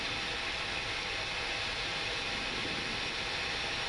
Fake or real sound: real